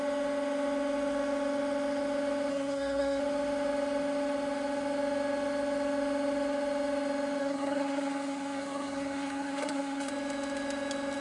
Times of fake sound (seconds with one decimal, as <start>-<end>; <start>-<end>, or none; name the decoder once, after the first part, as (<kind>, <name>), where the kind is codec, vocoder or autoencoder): 2.5-3.2 (codec, SNAC); 7.4-10.1